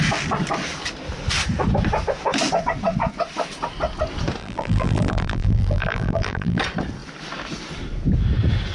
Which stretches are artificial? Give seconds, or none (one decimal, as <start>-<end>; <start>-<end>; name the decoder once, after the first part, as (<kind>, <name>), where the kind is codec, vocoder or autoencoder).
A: 4.4-6.6 (vocoder, BigVGAN v2)